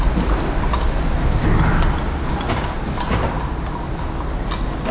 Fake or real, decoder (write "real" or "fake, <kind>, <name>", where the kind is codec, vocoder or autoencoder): real